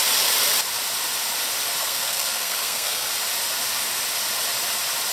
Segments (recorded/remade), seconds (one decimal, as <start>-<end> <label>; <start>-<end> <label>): 0.0-1.8 recorded; 1.8-3.1 remade; 3.1-5.1 recorded